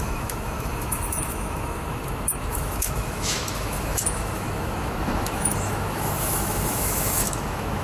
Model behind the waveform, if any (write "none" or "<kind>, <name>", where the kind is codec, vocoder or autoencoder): autoencoder, DAC-VAE